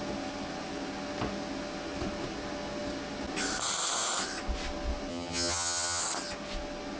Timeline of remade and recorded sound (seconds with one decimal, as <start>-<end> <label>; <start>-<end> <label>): 0.0-5.1 recorded; 5.1-6.0 remade; 6.0-7.0 recorded